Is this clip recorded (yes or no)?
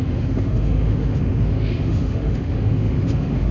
no